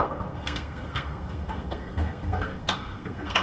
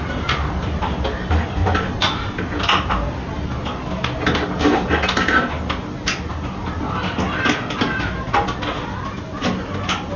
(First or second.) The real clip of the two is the second